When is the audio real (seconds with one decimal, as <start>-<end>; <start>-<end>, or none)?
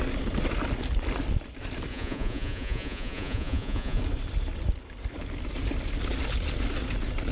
0.0-1.9; 4.0-7.3